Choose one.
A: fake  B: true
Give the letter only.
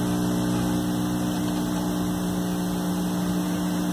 B